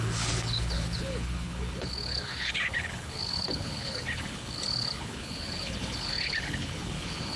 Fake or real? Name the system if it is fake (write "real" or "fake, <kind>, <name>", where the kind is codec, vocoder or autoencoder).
fake, codec, HILCodec